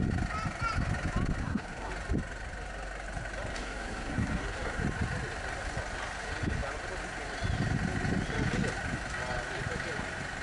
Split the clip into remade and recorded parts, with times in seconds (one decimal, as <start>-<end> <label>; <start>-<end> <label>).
0.0-1.4 recorded; 1.4-1.9 remade; 1.9-3.5 recorded; 3.5-4.8 remade; 4.8-10.4 recorded